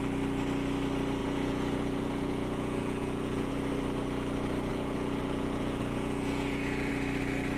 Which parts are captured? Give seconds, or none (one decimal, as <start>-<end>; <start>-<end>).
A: 0.0-1.2; 3.5-4.7; 6.9-7.6